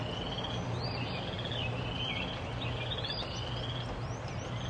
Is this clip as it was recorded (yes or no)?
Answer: yes